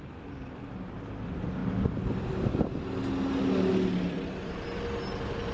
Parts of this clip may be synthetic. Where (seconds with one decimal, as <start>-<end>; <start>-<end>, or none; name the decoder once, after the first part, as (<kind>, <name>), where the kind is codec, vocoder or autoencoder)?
1.6-2.2 (vocoder, BigVGAN v2); 3.7-4.5